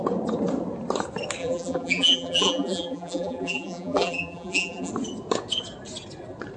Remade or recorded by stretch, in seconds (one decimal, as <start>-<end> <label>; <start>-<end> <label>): 0.0-1.4 recorded; 1.4-4.9 remade; 4.9-6.6 recorded